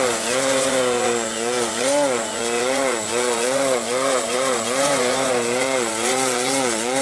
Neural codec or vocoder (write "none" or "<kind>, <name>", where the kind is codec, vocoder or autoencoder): vocoder, Vocos